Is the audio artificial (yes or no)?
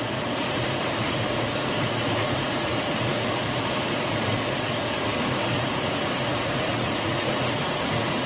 yes